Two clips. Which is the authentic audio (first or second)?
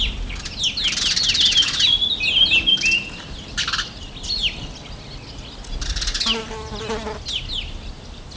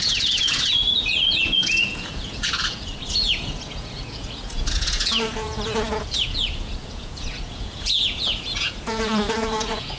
first